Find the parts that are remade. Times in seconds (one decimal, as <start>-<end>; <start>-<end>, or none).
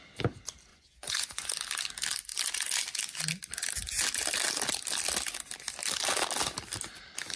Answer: 0.7-1.5